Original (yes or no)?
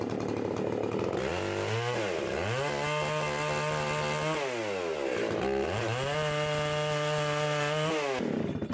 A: yes